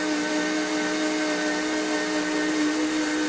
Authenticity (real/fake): real